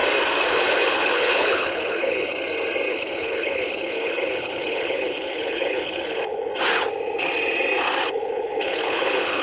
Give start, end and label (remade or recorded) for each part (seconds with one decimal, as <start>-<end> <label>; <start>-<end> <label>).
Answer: 0.0-0.5 recorded; 0.5-2.3 remade; 2.3-2.9 recorded; 2.9-6.5 remade; 6.5-8.1 recorded; 8.1-9.4 remade